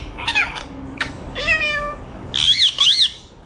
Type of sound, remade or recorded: remade